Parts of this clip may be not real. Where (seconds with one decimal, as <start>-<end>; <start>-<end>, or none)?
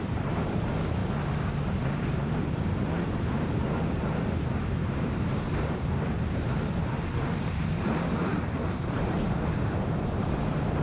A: 0.0-1.0; 1.7-10.8